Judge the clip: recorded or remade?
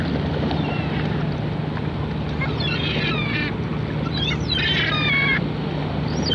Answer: recorded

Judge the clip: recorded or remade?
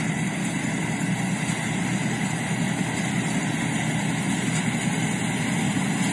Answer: recorded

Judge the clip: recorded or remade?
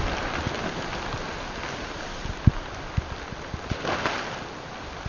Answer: recorded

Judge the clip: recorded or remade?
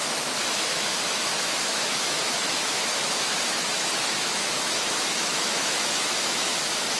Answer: remade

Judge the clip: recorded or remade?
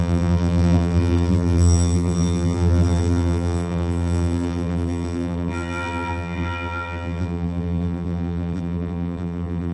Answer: remade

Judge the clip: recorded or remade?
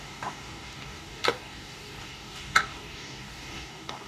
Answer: remade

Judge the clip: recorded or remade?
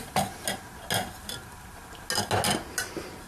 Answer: recorded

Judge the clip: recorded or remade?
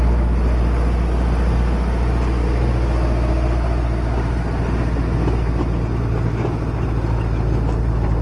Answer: recorded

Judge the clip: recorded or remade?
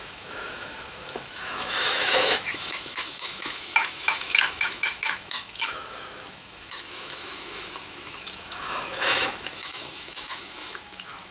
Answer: remade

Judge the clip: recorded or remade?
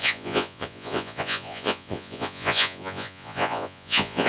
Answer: remade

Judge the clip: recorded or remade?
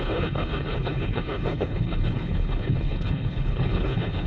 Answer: remade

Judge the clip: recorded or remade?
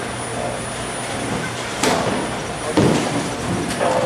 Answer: recorded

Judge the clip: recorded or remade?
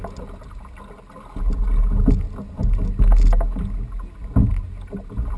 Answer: recorded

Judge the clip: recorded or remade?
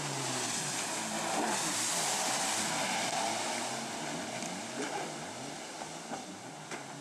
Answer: recorded